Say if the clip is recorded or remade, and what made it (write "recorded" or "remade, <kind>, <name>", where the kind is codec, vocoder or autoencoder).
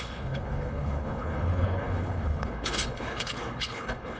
remade, codec, HILCodec